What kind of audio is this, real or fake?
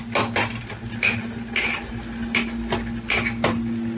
real